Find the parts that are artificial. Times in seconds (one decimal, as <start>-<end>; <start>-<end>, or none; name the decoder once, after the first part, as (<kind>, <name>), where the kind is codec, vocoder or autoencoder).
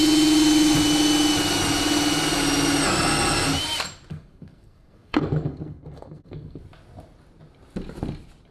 4.1-6.6 (codec, SNAC)